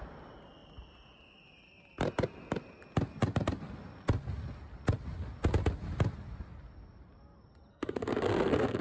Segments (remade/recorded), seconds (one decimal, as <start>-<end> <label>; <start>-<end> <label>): 0.0-7.7 recorded; 7.7-8.8 remade